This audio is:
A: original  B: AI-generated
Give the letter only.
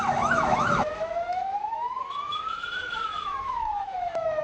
B